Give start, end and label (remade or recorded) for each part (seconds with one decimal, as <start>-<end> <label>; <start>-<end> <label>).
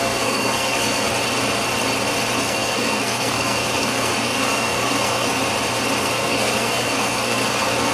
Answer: 0.0-1.1 remade; 1.1-2.4 recorded; 2.4-5.4 remade; 5.4-6.0 recorded; 6.0-7.9 remade